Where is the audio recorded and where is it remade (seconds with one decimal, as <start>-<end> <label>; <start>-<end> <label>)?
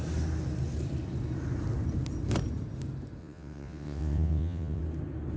0.0-3.2 recorded; 3.2-4.8 remade; 4.8-5.4 recorded